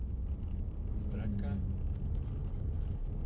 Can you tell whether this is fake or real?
real